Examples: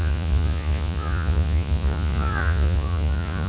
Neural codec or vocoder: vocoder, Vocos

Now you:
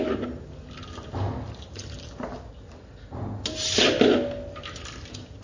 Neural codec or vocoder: none